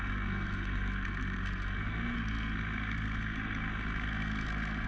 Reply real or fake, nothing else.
fake